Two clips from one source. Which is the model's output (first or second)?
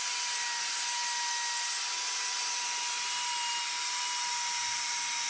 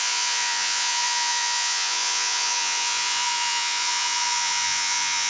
second